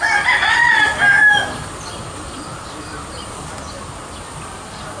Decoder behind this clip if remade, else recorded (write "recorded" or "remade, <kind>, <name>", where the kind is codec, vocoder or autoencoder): recorded